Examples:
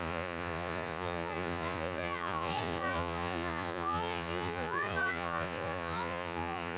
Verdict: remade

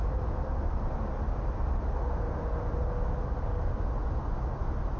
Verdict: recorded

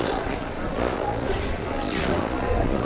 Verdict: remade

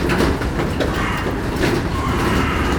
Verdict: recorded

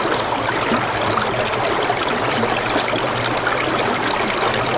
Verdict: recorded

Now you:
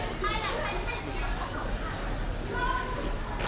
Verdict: recorded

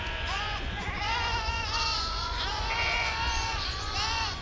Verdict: remade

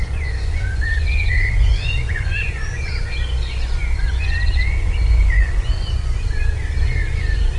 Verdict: remade